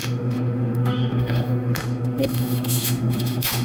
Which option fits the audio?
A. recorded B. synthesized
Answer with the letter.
B